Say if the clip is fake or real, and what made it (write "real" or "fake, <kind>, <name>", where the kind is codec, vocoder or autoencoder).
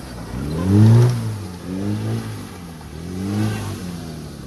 real